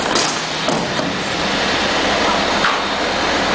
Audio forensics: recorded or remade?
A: recorded